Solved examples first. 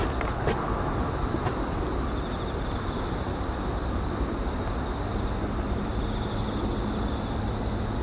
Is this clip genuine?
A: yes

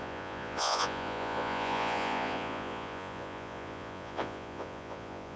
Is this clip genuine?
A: no